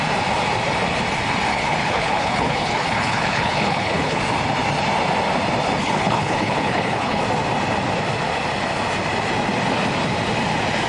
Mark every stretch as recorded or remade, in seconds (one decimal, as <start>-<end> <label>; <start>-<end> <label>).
0.0-1.5 recorded; 1.5-4.2 remade; 4.2-5.8 recorded; 5.8-7.2 remade; 7.2-10.9 recorded